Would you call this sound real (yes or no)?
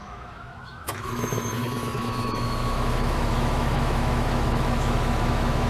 no